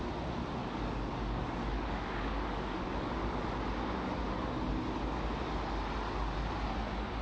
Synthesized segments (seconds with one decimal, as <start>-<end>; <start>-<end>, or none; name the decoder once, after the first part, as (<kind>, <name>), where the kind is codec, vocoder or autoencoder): 0.6-3.4 (codec, DAC)